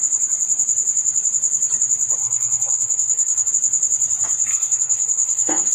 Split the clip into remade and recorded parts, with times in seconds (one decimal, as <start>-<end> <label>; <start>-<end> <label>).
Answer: 0.0-2.2 recorded; 2.2-3.5 remade; 3.5-4.5 recorded; 4.5-5.7 remade